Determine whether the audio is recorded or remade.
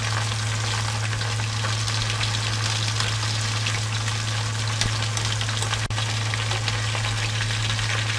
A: recorded